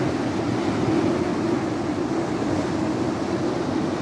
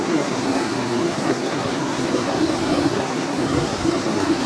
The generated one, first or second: second